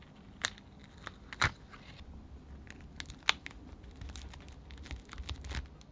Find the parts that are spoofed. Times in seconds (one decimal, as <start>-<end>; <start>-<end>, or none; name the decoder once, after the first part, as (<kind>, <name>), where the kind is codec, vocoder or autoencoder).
none